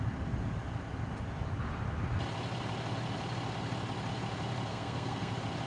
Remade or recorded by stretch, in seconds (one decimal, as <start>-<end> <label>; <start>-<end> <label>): 0.0-4.7 recorded; 4.7-5.3 remade; 5.3-5.7 recorded